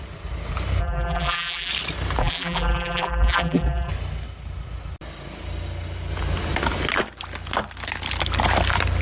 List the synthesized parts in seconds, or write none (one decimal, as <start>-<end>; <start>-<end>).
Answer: 0.8-1.7; 2.2-3.9